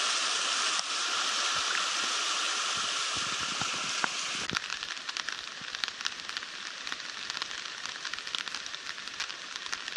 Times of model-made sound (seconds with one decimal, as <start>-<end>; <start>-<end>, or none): none